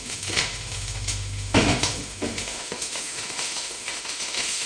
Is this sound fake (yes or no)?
yes